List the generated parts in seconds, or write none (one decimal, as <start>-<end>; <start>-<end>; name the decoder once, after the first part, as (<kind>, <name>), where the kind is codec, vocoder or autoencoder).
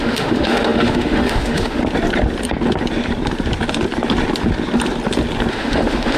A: 0.0-1.8 (autoencoder, DAC-VAE); 5.5-6.2